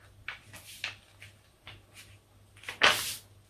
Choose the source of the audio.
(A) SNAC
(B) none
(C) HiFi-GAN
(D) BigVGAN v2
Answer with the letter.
B